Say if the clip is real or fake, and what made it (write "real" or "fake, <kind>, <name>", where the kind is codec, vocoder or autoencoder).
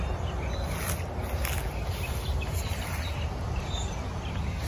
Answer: real